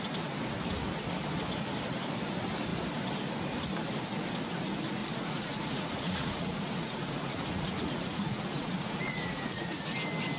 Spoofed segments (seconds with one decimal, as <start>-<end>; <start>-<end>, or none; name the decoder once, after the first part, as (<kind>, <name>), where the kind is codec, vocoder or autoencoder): 5.0-9.8 (vocoder, Vocos)